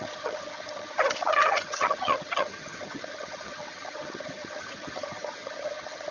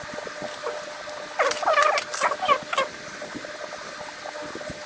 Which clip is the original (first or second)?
second